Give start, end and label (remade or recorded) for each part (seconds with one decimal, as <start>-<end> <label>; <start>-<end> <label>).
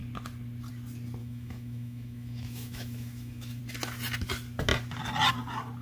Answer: 0.0-1.2 recorded; 1.2-3.6 remade; 3.6-5.8 recorded